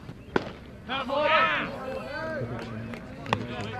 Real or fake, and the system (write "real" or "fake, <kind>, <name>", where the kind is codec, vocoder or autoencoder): real